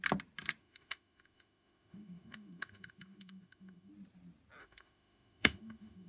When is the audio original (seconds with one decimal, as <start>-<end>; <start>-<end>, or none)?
0.0-0.6; 3.9-4.6